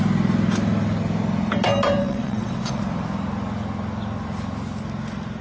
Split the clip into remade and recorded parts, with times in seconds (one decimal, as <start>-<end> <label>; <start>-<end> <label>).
0.0-2.0 recorded; 2.0-2.8 remade; 2.8-5.4 recorded